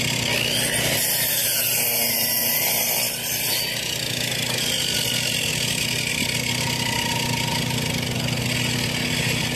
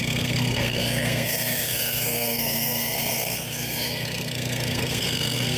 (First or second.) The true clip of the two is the first